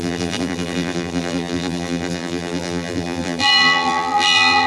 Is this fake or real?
fake